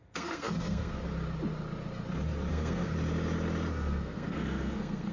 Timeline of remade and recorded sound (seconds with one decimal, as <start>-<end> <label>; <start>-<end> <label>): 0.0-1.0 remade; 1.0-2.5 recorded; 2.5-2.9 remade; 2.9-3.7 recorded; 3.7-5.1 remade